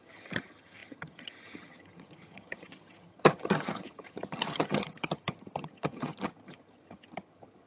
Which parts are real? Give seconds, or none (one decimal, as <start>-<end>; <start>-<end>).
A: none